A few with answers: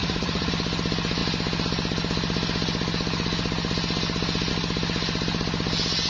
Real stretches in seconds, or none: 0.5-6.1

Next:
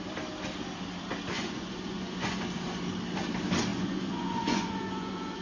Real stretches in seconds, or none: 0.0-1.3; 2.4-3.7